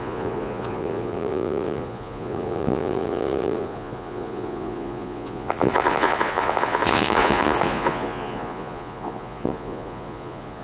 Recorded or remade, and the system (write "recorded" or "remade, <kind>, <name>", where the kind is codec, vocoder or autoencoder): remade, vocoder, Vocos